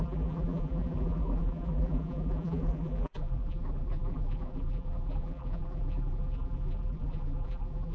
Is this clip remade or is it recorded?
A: remade